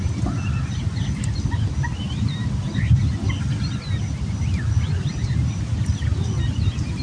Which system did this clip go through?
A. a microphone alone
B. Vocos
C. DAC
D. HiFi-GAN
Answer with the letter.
A